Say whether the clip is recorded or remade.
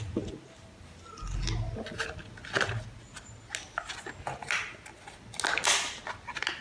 recorded